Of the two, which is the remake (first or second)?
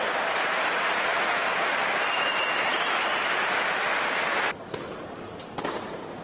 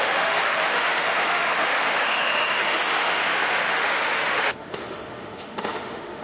second